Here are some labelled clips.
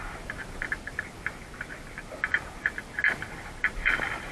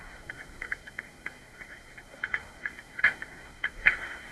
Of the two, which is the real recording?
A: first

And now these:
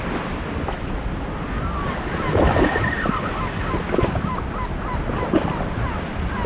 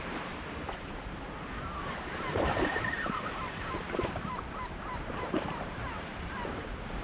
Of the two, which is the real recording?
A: first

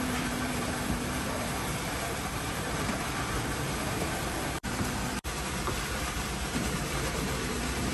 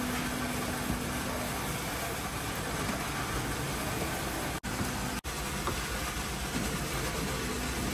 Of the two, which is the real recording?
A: second